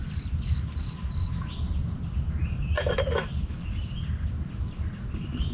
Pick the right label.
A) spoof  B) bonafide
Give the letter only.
B